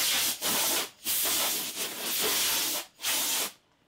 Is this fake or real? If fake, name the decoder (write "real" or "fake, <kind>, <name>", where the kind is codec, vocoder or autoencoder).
real